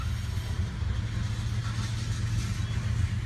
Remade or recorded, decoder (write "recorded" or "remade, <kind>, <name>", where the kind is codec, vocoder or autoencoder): recorded